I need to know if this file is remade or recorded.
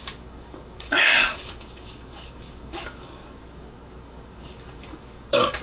remade